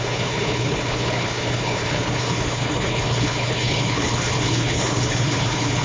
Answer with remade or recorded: remade